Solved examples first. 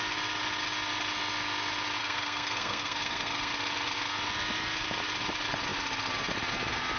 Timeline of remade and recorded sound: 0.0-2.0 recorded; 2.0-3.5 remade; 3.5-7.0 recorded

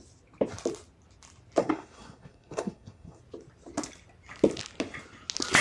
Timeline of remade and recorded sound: 0.0-1.6 recorded; 1.6-3.2 remade; 3.2-5.6 recorded

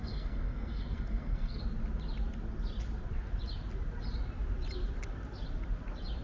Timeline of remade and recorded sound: 0.0-1.6 remade; 1.6-6.2 recorded

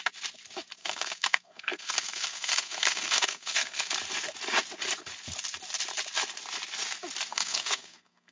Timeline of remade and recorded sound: 0.0-0.8 recorded; 0.8-3.9 remade; 3.9-7.3 recorded; 7.3-8.3 remade